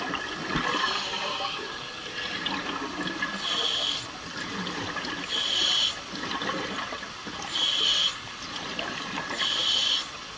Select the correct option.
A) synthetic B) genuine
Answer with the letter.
B